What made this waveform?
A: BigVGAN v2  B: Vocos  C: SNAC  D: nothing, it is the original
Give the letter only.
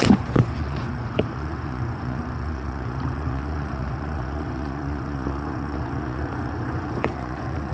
B